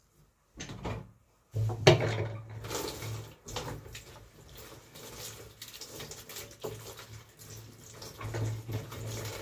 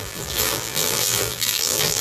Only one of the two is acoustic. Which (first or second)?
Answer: first